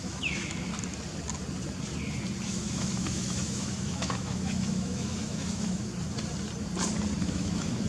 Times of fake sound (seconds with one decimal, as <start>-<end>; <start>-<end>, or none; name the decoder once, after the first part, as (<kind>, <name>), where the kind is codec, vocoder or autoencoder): 0.0-0.7 (autoencoder, DAC-VAE); 2.5-5.9; 7.2-7.9